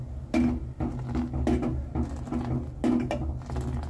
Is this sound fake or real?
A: real